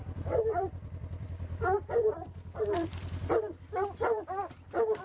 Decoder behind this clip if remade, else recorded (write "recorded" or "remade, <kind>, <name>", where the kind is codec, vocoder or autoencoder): remade, vocoder, BigVGAN v2